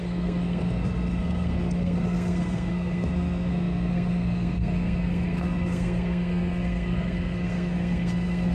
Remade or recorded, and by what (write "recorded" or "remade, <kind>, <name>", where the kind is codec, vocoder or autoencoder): remade, codec, SNAC